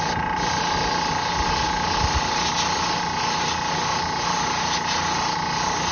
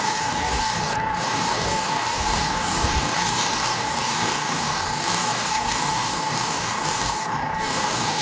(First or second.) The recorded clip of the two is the first